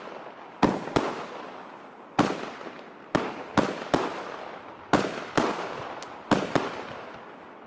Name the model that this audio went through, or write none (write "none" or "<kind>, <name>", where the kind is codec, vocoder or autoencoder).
none